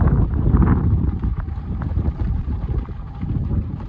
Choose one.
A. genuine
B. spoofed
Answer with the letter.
B